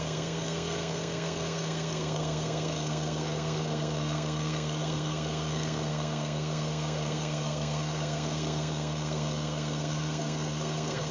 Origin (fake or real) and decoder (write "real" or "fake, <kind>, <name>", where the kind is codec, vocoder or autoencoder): fake, codec, SNAC